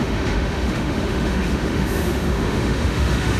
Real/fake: fake